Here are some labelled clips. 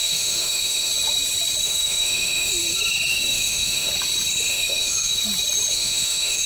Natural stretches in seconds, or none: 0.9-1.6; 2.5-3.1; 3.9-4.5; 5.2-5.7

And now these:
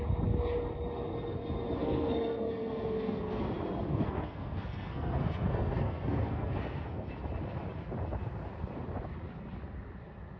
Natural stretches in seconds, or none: 0.0-1.8; 3.4-3.9; 7.1-10.4

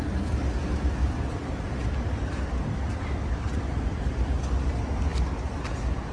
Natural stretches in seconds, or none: 0.0-6.1

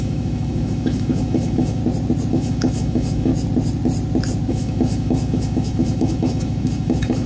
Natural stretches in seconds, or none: 1.8-2.3; 3.3-4.5

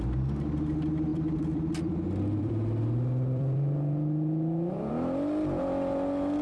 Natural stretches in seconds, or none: 0.0-1.1; 4.9-6.4

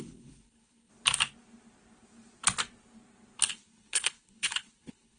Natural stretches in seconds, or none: 0.9-3.5